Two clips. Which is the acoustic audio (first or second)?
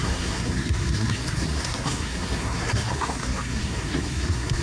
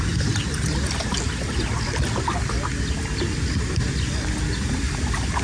second